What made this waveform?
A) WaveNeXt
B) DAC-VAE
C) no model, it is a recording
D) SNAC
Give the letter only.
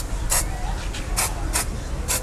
C